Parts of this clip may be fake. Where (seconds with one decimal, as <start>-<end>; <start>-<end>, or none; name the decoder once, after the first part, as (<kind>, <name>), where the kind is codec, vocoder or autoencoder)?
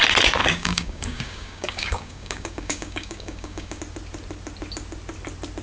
0.4-3.8 (codec, DAC)